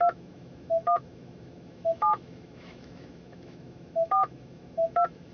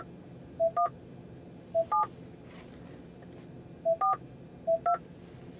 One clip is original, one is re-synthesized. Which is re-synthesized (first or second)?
first